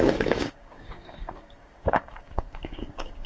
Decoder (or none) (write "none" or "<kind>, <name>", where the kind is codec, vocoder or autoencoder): codec, DAC